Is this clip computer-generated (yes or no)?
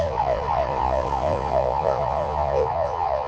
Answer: yes